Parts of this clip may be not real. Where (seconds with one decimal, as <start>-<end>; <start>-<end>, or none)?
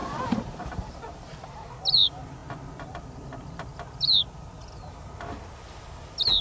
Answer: 0.0-1.7